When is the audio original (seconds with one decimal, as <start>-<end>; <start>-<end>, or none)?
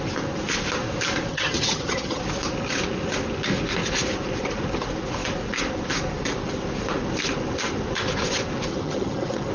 0.0-1.3; 2.2-8.7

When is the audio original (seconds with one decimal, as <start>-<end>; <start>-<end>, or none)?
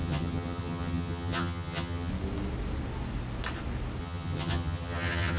2.1-4.0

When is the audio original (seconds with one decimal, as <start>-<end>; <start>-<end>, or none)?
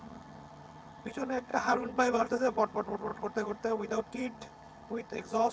none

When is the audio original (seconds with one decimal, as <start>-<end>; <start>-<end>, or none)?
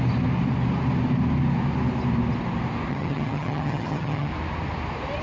0.0-2.9; 4.3-5.2